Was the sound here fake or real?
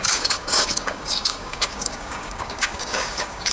fake